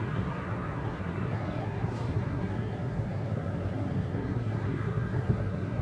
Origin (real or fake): fake